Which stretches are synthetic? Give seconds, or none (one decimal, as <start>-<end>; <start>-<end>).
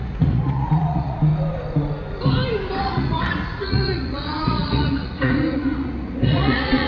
0.0-1.3; 2.8-6.9